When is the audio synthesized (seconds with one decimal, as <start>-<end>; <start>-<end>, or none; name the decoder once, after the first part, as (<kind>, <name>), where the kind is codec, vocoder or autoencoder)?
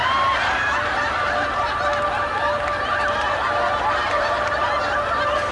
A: 0.0-3.3 (vocoder, BigVGAN v2); 4.0-4.8